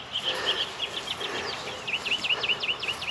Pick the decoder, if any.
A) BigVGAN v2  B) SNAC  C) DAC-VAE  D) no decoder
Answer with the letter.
D